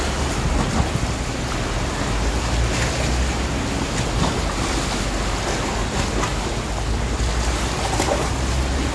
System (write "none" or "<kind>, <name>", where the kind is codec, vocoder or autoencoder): none